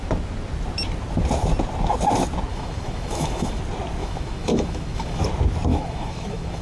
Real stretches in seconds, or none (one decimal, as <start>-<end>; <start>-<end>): 0.0-2.5; 3.6-4.0; 5.2-5.7